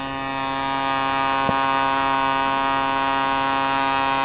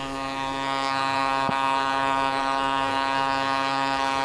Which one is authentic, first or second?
first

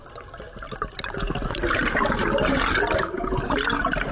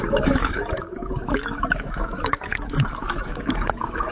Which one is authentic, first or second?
first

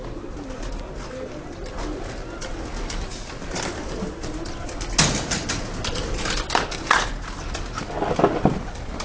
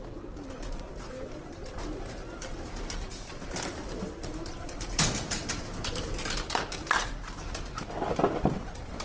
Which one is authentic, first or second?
first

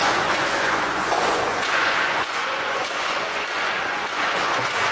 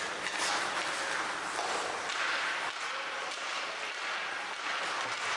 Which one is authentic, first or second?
second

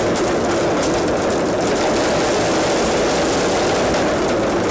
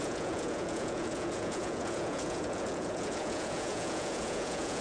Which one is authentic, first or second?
first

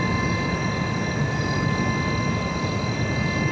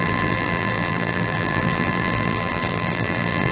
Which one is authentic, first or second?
first